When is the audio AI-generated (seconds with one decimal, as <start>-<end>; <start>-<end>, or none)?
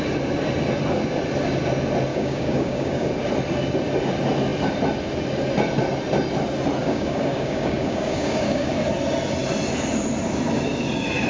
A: 2.1-3.1; 6.8-8.7